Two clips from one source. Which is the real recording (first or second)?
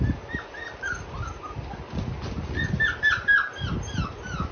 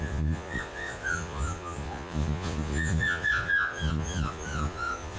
first